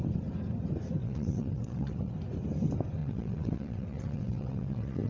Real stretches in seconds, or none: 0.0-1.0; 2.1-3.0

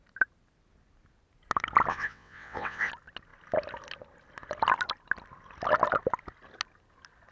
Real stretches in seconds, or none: 0.0-1.9; 2.9-7.3

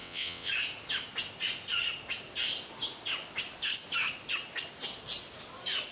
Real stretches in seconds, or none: 0.5-5.9

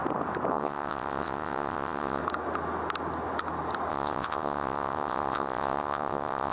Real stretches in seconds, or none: 0.0-0.5; 2.2-3.9

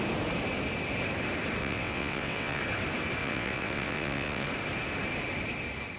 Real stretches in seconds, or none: 0.0-1.6; 2.6-3.2; 4.5-6.0

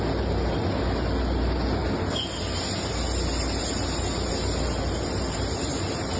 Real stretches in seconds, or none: 0.0-6.2